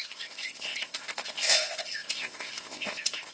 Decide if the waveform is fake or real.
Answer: fake